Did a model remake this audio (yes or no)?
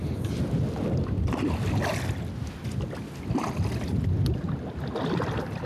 no